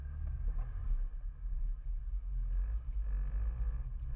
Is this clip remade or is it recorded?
recorded